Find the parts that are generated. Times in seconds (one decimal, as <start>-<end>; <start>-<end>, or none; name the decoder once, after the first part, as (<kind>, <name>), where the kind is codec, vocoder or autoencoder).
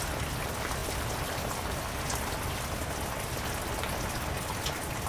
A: none